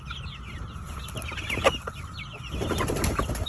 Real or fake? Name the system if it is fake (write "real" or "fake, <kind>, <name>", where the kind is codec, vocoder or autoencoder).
real